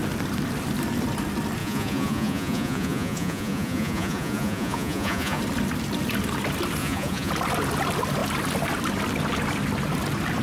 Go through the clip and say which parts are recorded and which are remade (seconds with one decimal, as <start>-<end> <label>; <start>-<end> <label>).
0.0-1.6 recorded; 1.6-5.4 remade; 5.4-6.8 recorded; 6.8-7.3 remade; 7.3-10.4 recorded